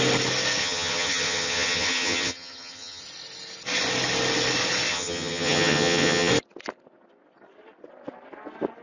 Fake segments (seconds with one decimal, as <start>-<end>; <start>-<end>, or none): 0.6-3.0; 4.9-6.3